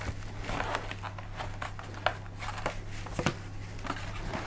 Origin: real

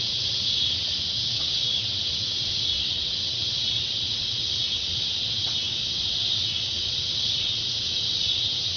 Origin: fake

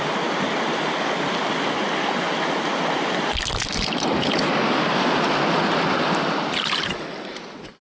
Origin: real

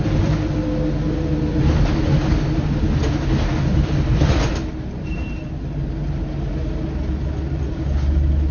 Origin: real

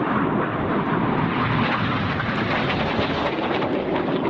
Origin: real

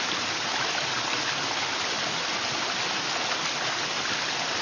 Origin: real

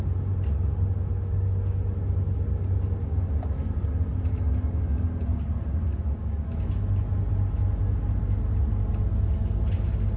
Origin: real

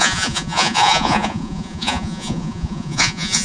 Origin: fake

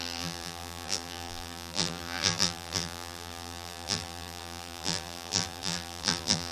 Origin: fake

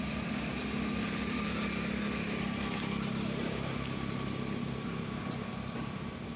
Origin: real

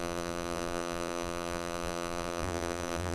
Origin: fake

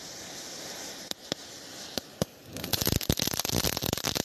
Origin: real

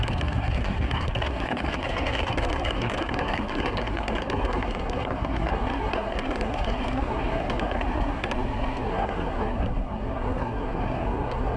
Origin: fake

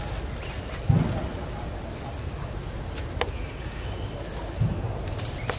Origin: real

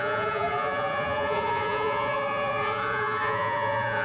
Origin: fake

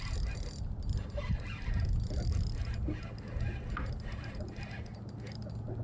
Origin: real